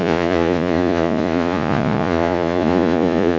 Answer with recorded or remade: remade